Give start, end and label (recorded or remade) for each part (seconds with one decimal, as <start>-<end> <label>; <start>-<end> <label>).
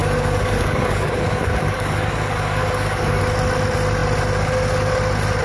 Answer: 0.0-3.2 remade; 3.2-5.4 recorded